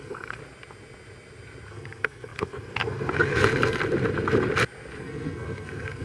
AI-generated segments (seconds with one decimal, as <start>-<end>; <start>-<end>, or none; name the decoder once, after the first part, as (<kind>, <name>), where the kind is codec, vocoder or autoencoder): 0.0-0.4 (codec, SNAC); 1.7-3.8; 5.0-6.0